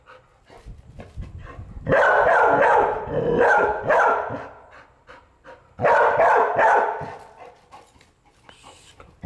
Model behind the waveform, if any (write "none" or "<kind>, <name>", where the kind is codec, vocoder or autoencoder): none